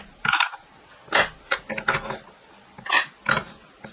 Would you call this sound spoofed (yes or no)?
no